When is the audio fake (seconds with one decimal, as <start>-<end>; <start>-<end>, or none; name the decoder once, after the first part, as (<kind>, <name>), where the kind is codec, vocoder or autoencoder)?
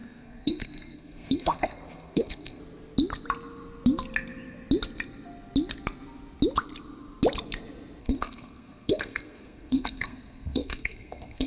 0.0-2.6 (codec, SNAC); 8.0-11.5